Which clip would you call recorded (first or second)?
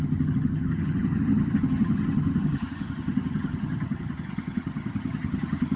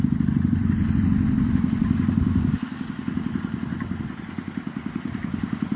second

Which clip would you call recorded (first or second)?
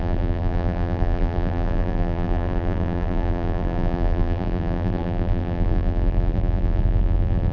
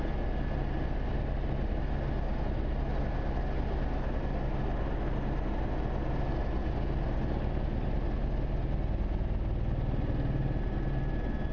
second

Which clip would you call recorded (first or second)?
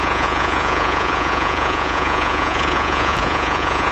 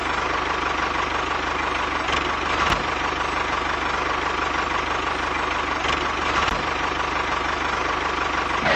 second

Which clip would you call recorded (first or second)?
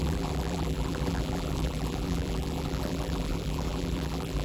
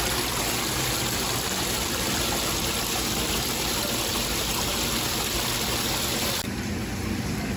second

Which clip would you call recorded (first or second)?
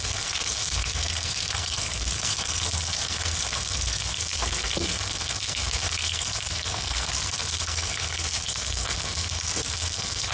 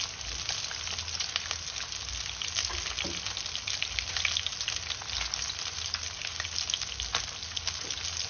second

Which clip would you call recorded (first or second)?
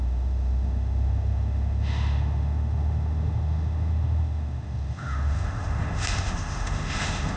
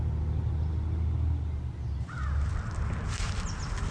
second